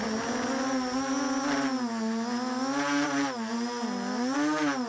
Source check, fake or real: real